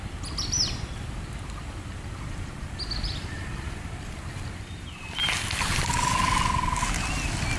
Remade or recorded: recorded